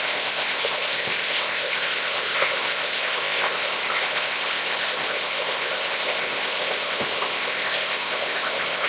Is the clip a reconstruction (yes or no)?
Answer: yes